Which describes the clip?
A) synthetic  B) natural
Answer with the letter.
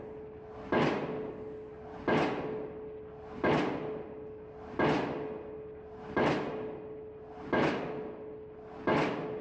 B